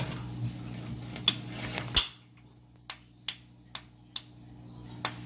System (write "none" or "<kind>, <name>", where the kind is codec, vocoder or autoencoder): none